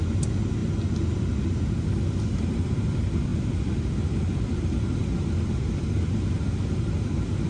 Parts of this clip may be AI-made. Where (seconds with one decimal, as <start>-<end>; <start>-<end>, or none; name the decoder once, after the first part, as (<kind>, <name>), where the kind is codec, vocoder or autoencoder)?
none